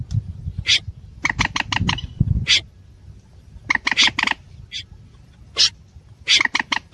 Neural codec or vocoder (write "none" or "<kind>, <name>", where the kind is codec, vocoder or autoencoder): none